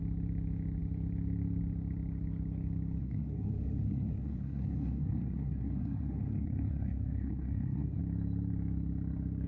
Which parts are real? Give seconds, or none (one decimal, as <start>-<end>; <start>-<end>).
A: 0.0-3.0; 8.0-9.5